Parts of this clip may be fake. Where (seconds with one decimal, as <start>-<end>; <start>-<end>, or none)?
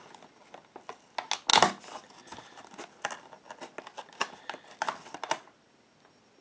none